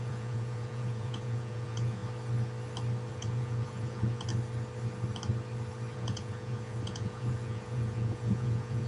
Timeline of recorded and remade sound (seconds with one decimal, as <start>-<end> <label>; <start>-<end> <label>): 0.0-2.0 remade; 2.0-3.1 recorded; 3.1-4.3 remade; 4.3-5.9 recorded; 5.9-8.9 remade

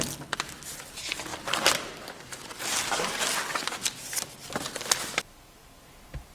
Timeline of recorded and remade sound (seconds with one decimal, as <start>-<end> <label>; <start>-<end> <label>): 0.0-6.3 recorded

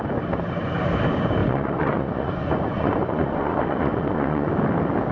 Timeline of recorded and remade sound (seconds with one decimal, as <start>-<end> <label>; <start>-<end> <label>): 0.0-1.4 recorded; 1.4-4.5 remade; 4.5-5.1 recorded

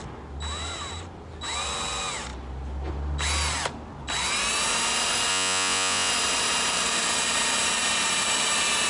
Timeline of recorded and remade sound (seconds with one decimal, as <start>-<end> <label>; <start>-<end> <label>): 0.0-5.3 recorded; 5.3-6.1 remade; 6.1-8.9 recorded

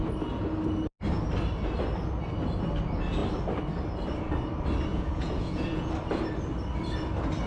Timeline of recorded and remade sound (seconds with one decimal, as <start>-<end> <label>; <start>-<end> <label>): 0.0-4.9 recorded; 4.9-5.9 remade; 5.9-7.5 recorded